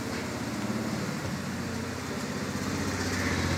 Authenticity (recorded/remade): recorded